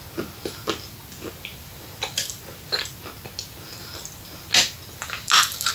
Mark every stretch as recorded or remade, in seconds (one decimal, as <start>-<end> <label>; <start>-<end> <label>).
0.0-5.7 recorded